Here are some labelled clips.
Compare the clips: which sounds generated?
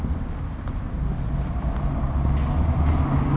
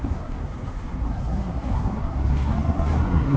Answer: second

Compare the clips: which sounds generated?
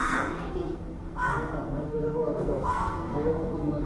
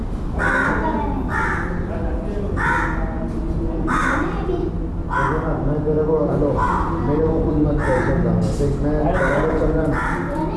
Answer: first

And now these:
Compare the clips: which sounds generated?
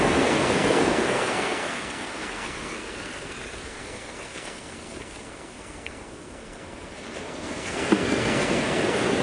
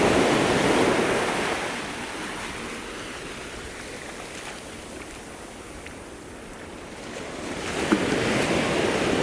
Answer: first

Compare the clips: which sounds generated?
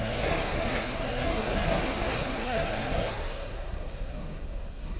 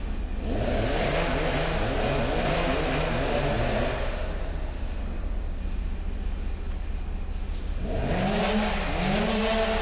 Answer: first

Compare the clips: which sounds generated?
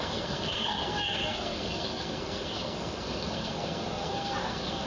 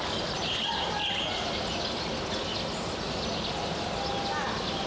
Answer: first